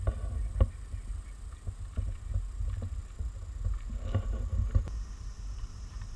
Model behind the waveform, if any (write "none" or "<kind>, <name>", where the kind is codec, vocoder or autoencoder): none